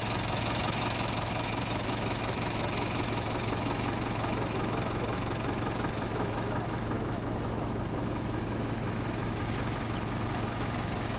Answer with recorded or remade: remade